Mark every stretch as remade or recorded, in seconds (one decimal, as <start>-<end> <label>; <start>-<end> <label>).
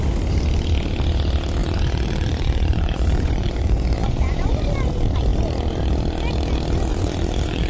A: 0.0-1.6 recorded; 1.6-4.7 remade; 4.7-6.9 recorded; 6.9-7.7 remade